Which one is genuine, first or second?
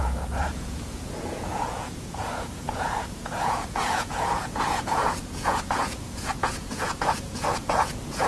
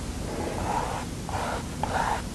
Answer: second